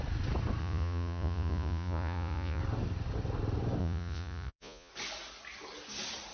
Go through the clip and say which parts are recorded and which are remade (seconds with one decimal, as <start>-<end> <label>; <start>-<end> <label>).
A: 0.0-0.6 recorded; 0.6-2.6 remade; 2.6-3.8 recorded; 3.8-4.9 remade; 4.9-6.3 recorded